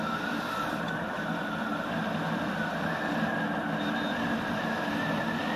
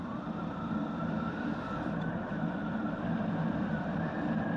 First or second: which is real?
first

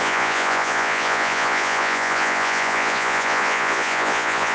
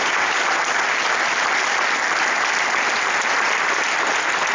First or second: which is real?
second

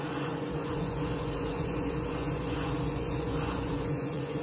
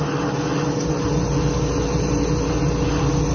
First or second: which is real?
second